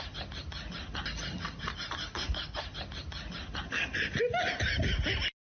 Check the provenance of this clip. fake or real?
real